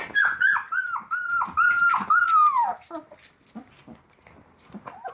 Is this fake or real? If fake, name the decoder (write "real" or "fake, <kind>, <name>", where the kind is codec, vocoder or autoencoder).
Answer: real